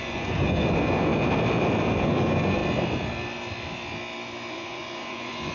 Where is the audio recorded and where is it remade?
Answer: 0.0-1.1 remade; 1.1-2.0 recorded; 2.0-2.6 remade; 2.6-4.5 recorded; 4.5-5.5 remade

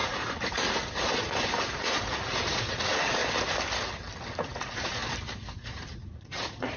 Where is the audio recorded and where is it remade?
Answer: 0.0-3.2 remade; 3.2-4.4 recorded; 4.4-5.0 remade; 5.0-5.5 recorded; 5.5-6.8 remade

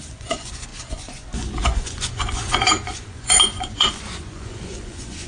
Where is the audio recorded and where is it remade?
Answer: 0.0-5.3 remade